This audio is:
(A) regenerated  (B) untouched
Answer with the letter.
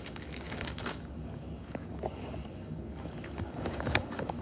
A